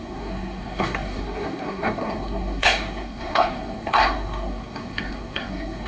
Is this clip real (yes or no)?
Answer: no